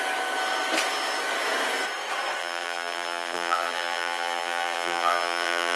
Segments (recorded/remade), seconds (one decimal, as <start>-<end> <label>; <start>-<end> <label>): 0.0-2.4 recorded; 2.4-5.8 remade